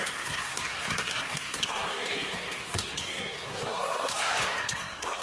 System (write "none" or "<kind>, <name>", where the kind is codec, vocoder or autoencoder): codec, SNAC